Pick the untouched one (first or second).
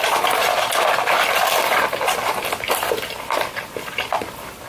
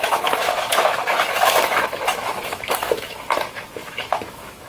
first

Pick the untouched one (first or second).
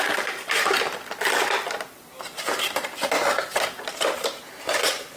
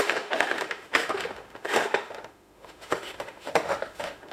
first